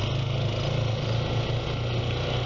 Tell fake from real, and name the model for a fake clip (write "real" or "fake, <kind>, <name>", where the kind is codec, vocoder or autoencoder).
real